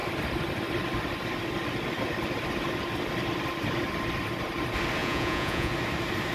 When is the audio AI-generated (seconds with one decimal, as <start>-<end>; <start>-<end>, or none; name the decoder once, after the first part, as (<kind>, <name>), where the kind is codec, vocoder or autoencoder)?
5.0-5.7 (vocoder, Vocos)